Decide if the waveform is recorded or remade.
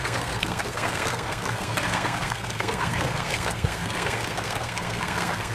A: remade